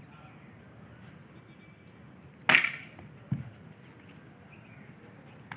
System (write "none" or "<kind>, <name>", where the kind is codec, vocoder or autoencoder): none